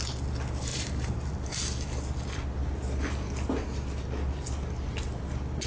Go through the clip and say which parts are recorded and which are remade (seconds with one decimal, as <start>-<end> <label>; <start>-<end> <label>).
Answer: 0.0-0.7 recorded; 0.7-1.3 remade; 1.3-5.7 recorded